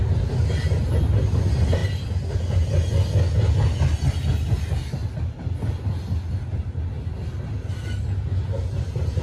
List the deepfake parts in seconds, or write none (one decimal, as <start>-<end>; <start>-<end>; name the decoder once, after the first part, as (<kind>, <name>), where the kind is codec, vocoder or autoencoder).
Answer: none